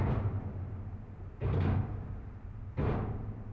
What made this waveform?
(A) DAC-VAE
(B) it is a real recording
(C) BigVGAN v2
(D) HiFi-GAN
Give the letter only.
B